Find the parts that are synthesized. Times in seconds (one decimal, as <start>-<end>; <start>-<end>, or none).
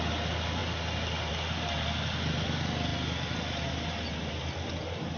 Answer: none